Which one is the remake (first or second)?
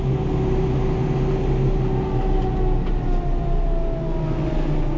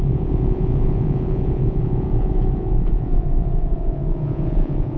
second